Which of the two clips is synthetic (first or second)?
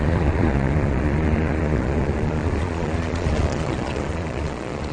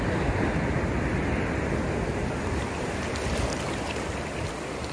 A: first